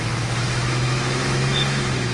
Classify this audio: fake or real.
fake